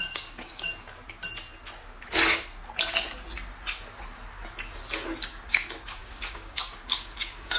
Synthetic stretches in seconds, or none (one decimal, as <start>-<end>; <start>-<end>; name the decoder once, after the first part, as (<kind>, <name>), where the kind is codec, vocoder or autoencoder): 0.0-0.7 (codec, DAC); 5.3-7.6

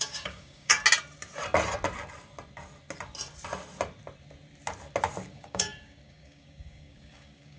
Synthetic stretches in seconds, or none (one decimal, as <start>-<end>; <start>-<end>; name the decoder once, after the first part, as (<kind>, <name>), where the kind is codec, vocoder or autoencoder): 0.0-0.7 (codec, DAC); 5.3-7.6

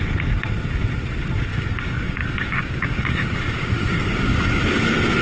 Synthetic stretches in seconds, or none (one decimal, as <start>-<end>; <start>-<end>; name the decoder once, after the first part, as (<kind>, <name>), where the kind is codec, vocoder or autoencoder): 1.5-4.6 (codec, DAC)

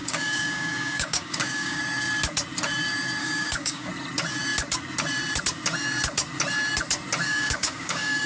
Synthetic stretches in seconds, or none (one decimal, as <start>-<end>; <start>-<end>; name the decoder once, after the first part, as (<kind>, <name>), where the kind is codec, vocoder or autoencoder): 0.0-1.8 (codec, DAC); 3.2-3.9; 7.2-8.3

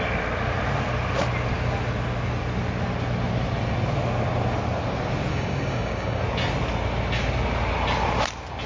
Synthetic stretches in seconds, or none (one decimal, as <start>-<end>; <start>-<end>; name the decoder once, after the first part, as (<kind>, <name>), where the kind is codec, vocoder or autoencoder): 5.3-6.2 (codec, DAC)

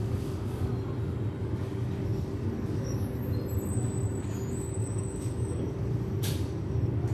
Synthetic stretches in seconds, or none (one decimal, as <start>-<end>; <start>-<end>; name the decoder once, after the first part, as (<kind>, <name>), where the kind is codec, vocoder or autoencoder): 0.0-0.7 (codec, DAC); 1.4-3.2; 4.2-7.1

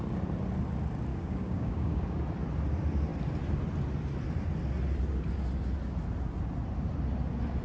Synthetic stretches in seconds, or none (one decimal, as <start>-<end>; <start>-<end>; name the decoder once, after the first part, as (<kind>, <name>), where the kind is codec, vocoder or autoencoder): 1.1-2.2 (codec, DAC)